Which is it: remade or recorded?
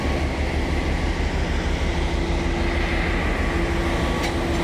recorded